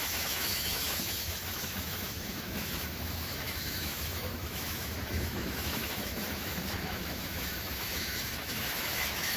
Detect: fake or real fake